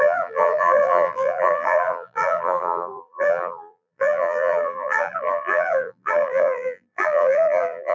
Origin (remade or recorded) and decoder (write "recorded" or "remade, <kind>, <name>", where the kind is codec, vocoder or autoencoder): remade, vocoder, BigVGAN v2